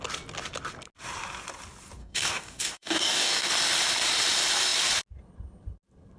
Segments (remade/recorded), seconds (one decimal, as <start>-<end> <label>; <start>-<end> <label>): 0.0-2.0 recorded; 2.0-3.5 remade; 3.5-6.2 recorded